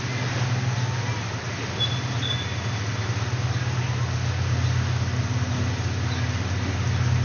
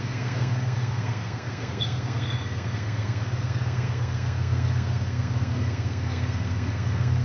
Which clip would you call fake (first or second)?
second